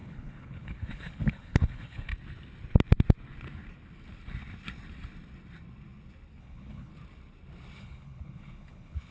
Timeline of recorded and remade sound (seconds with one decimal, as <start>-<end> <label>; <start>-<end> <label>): 0.0-2.1 remade; 2.1-6.4 recorded; 6.4-6.9 remade; 6.9-7.8 recorded; 7.8-9.1 remade